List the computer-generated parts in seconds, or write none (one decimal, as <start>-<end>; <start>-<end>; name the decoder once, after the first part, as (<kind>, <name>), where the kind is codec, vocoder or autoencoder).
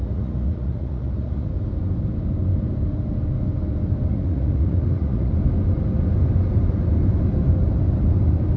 0.0-1.5 (vocoder, Vocos); 4.1-5.3